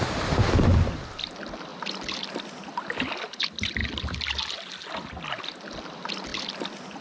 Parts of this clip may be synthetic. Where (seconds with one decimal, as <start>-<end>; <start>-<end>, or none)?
none